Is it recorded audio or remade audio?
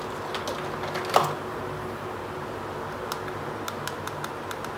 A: recorded